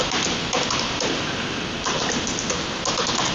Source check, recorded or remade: recorded